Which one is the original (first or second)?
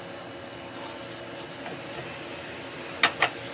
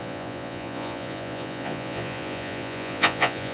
first